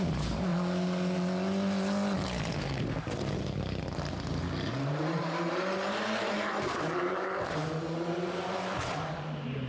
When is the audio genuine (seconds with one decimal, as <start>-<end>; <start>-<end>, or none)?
0.5-4.9